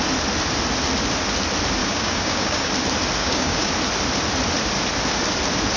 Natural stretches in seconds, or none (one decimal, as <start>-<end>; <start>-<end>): 0.0-1.8; 2.7-3.2; 3.7-5.8